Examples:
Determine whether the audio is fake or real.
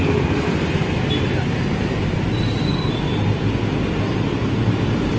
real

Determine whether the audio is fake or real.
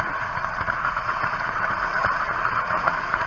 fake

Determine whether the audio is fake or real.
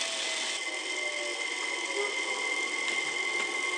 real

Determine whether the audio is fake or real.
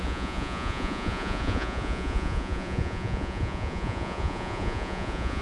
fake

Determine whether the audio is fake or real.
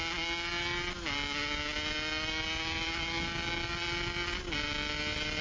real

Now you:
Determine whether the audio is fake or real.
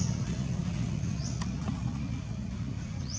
fake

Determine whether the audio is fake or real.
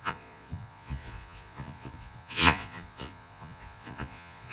fake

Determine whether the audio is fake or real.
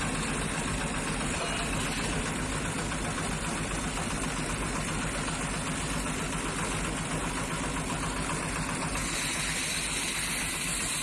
real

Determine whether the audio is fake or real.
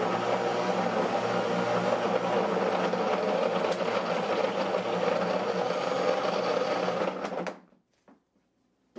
real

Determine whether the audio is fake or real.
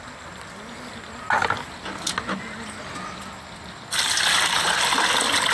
real